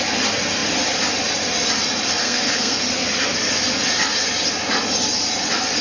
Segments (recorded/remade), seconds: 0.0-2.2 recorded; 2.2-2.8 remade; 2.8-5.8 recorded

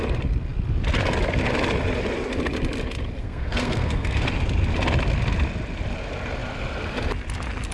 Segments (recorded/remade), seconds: 0.0-3.2 recorded; 3.2-4.2 remade; 4.2-7.7 recorded

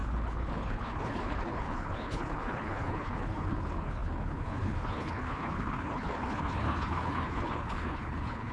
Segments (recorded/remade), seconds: 0.0-8.5 remade

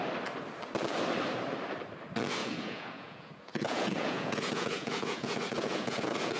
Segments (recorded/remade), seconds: 0.0-2.4 recorded; 2.4-6.4 remade